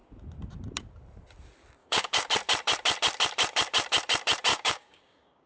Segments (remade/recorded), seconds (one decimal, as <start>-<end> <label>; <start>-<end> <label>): 0.0-1.8 recorded; 1.8-2.3 remade; 2.3-4.5 recorded; 4.5-5.5 remade